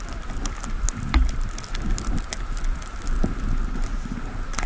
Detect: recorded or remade recorded